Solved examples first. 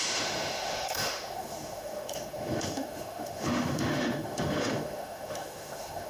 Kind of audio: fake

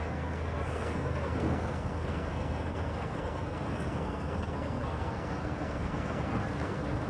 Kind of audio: fake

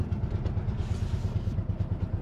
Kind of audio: real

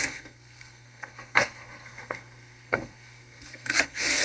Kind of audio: fake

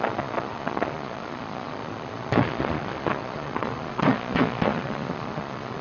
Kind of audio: fake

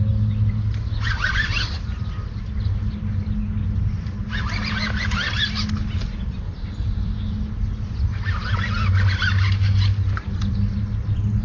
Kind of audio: real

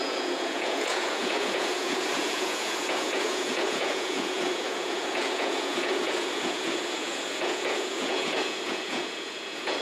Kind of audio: fake